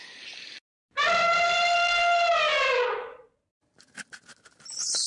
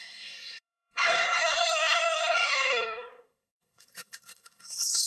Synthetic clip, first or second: second